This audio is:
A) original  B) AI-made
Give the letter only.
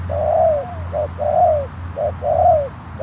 A